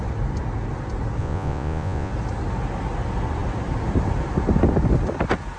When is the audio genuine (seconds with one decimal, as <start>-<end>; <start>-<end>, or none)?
0.0-1.2; 2.1-5.6